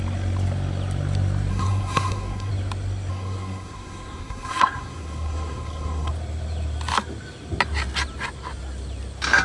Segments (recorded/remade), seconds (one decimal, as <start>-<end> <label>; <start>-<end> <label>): 0.0-1.5 recorded; 1.5-2.5 remade; 2.5-3.1 recorded; 3.1-6.1 remade; 6.1-9.4 recorded